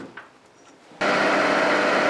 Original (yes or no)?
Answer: yes